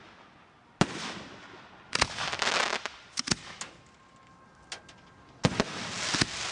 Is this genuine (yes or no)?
yes